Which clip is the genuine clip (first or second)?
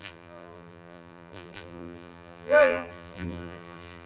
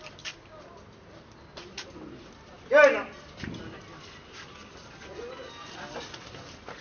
second